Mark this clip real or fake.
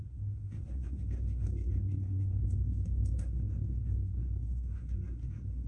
fake